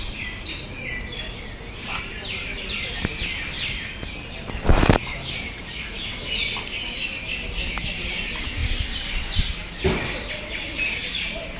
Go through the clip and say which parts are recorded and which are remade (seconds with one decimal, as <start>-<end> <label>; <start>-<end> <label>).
0.0-11.6 recorded